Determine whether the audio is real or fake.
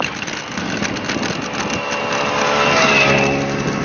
real